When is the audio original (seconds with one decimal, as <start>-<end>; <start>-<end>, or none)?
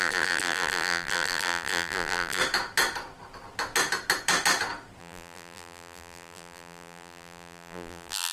2.4-5.0